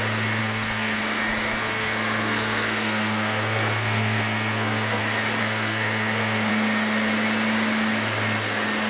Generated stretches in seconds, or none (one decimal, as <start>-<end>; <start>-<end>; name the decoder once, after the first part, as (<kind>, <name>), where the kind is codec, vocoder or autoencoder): 0.4-1.0 (codec, SNAC); 1.6-5.0; 5.4-6.5